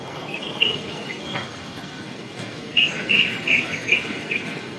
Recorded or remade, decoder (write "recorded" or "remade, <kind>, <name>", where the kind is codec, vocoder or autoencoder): remade, codec, SNAC